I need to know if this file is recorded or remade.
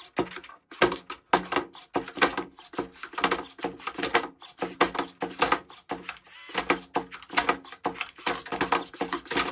recorded